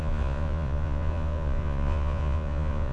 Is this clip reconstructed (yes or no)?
yes